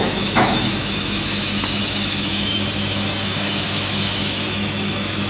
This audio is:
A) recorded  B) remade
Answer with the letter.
B